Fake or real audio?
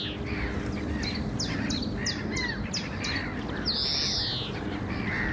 real